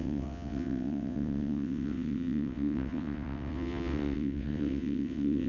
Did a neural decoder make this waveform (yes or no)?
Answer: yes